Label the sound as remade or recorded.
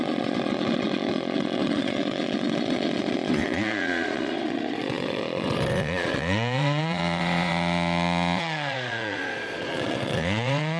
remade